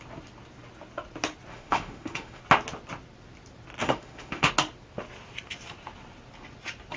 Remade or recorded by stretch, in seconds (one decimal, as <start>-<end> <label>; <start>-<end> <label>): 0.0-1.5 recorded; 1.5-2.4 remade; 2.4-3.8 recorded; 3.8-4.5 remade; 4.5-7.0 recorded